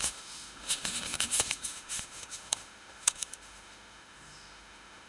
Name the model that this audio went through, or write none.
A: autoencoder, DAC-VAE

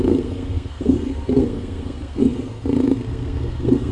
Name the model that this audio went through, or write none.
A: codec, SNAC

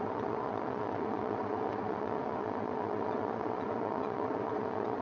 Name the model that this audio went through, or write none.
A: vocoder, WaveNeXt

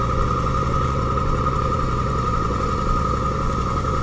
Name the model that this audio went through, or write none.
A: vocoder, Vocos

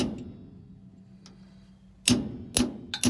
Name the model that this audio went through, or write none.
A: none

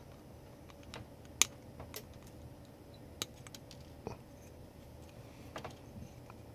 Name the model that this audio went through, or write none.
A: none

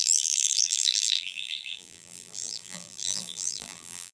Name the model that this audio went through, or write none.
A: vocoder, BigVGAN v2